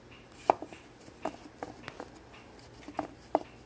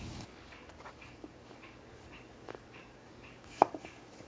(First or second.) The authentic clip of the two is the first